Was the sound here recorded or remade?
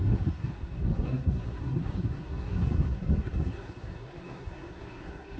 remade